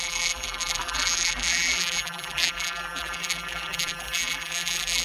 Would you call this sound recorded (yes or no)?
no